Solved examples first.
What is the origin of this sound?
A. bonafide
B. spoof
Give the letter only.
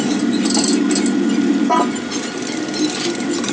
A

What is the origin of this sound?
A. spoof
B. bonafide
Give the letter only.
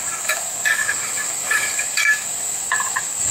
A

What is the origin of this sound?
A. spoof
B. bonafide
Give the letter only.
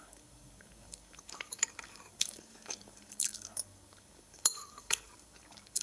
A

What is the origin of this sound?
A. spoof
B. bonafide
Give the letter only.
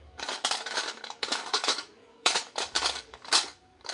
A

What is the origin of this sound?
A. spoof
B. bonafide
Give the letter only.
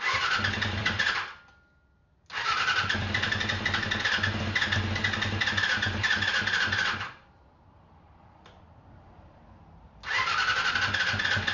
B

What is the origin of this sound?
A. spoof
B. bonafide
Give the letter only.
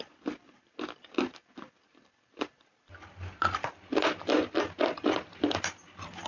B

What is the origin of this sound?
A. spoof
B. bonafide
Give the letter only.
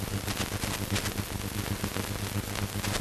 B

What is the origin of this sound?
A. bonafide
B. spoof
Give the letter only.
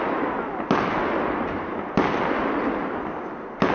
A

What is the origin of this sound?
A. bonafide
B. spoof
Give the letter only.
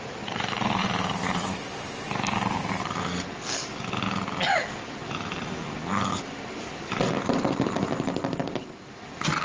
A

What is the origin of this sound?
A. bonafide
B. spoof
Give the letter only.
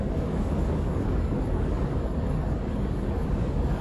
B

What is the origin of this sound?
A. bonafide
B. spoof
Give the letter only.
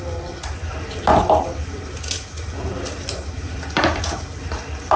A